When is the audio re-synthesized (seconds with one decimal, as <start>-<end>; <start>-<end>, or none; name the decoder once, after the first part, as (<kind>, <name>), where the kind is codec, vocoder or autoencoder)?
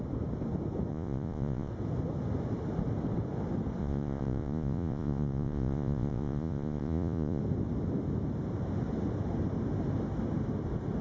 0.9-1.7 (vocoder, Vocos); 3.8-7.4